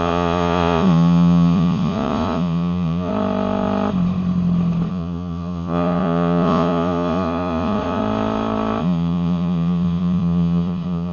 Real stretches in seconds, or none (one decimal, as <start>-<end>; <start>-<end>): 3.1-4.9; 8.0-8.8